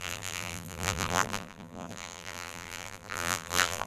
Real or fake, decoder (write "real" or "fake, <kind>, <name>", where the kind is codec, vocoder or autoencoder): fake, vocoder, BigVGAN v2